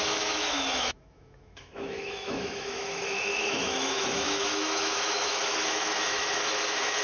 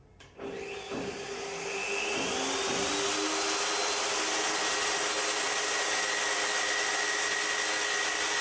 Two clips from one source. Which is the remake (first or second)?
first